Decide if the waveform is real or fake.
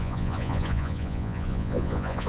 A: fake